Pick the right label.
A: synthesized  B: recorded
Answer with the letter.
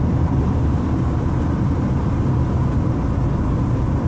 B